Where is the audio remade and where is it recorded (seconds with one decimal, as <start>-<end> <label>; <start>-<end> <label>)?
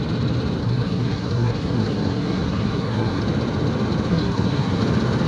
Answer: 0.0-0.6 recorded; 0.6-3.2 remade; 3.2-4.1 recorded; 4.1-4.8 remade; 4.8-5.3 recorded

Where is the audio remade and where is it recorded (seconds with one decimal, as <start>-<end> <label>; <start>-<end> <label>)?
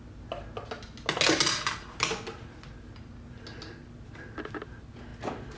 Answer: 0.0-5.6 recorded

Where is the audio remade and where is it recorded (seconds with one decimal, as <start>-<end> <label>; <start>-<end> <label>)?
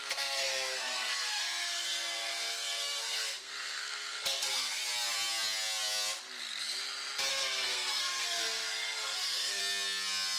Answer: 0.0-4.8 remade; 4.8-7.3 recorded; 7.3-9.6 remade; 9.6-10.4 recorded